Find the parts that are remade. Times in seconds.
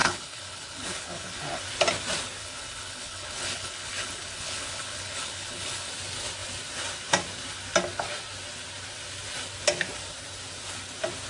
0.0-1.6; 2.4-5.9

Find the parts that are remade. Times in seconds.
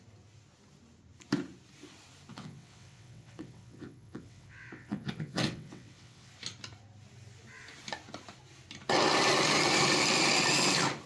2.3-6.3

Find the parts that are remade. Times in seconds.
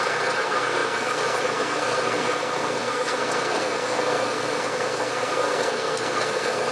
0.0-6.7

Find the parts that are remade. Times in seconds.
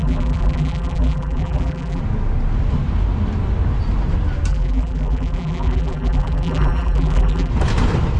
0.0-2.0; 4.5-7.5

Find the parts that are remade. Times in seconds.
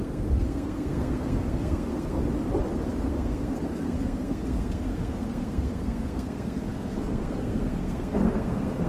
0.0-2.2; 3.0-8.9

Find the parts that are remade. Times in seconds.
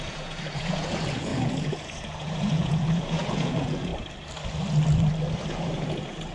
0.0-3.9; 5.5-6.3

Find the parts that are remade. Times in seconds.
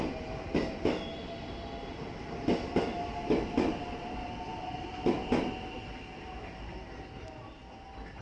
none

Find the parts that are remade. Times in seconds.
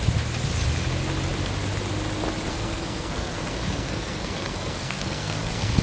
2.5-5.8